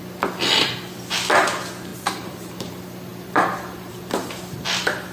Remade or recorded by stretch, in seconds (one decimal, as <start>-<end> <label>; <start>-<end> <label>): 0.0-1.9 recorded; 1.9-2.7 remade; 2.7-3.1 recorded; 3.1-4.0 remade; 4.0-5.1 recorded